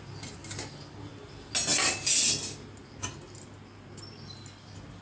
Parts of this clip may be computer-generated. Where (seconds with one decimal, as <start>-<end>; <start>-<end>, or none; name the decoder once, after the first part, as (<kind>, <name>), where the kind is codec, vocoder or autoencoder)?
none

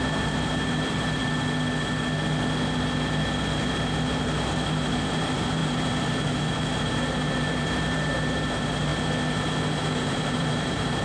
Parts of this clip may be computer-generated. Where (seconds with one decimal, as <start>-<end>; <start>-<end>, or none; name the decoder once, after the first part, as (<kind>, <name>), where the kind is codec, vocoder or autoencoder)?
0.0-1.2 (vocoder, BigVGAN v2); 3.6-8.9; 10.1-11.0

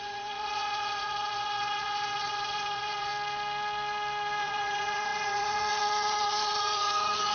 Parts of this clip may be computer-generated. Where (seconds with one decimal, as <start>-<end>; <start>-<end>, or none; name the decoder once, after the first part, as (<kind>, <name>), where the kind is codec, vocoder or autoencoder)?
0.0-3.1 (vocoder, Vocos); 4.4-7.3

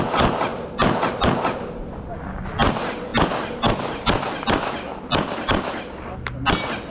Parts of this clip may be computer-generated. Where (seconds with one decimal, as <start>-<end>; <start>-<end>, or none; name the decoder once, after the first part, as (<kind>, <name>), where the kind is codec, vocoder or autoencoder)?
none

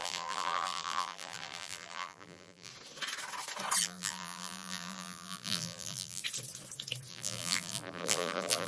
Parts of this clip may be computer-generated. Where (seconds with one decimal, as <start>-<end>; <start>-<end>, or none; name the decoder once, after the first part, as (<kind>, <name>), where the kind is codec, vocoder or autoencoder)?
0.0-2.7 (vocoder, BigVGAN v2); 3.8-6.2; 7.1-8.7

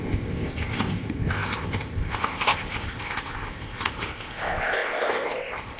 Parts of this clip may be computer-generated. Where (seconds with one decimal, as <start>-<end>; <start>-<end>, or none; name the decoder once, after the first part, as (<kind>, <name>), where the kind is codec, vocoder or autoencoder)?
0.0-5.8 (codec, ZipCodec)

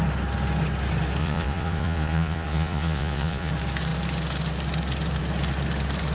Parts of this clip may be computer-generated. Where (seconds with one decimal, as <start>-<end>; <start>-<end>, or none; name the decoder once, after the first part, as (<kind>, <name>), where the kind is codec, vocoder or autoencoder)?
1.2-3.5 (vocoder, Vocos)